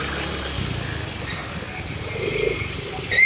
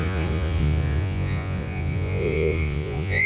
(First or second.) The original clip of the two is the first